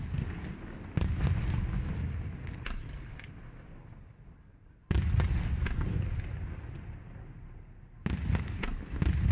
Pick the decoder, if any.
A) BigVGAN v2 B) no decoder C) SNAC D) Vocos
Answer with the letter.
B